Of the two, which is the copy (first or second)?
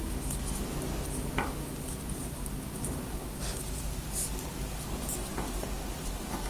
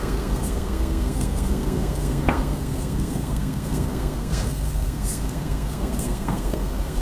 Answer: second